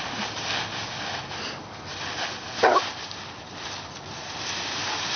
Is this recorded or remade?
recorded